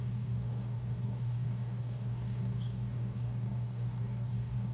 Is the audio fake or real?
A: fake